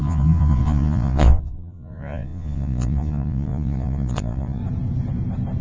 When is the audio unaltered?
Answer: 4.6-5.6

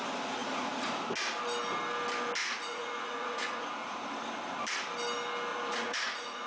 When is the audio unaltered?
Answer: 0.0-0.4; 1.0-2.4; 4.1-5.5

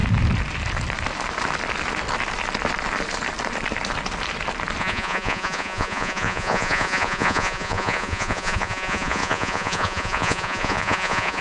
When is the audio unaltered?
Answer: 0.0-4.8